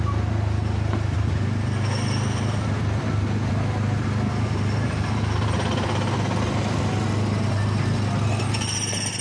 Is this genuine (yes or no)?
yes